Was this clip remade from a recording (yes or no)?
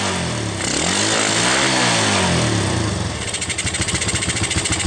no